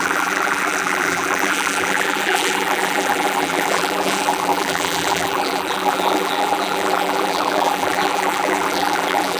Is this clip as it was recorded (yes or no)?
no